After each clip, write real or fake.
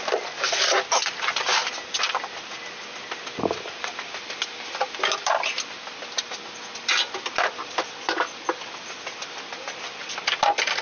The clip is real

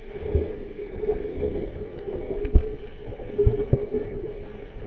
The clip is fake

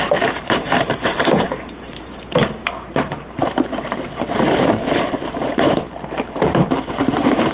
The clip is fake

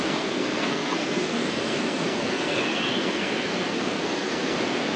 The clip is fake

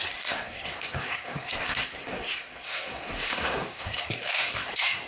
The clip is fake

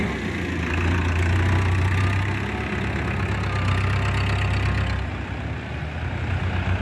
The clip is real